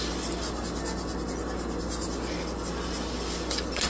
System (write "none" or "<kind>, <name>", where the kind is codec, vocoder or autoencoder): none